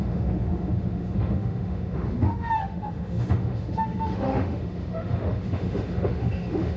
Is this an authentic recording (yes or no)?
no